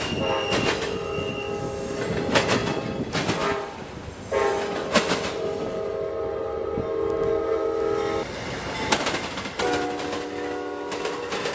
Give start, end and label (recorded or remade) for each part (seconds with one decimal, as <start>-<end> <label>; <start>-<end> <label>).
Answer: 0.0-11.5 recorded